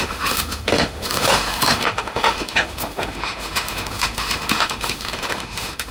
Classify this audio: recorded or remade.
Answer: remade